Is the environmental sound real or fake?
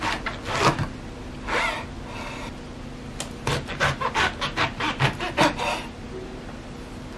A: real